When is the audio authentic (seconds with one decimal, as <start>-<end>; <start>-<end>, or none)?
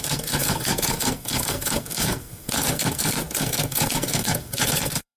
none